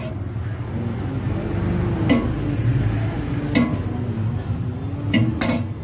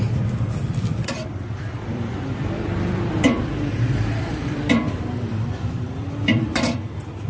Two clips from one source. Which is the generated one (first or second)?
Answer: second